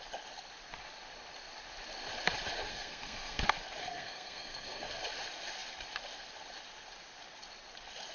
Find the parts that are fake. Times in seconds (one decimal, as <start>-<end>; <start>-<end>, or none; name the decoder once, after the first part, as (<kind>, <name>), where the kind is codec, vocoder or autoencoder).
2.7-3.4 (codec, SNAC); 3.8-5.0